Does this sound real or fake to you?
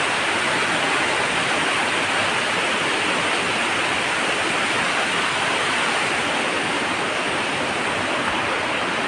real